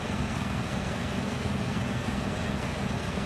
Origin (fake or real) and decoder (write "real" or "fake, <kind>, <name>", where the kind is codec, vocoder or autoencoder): fake, codec, SNAC